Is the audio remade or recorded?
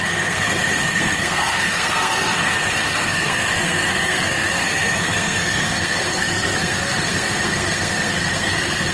remade